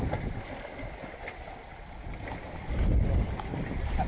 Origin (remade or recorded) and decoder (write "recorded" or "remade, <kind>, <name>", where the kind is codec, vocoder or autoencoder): recorded